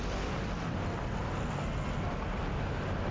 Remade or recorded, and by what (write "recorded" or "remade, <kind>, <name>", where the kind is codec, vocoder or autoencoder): recorded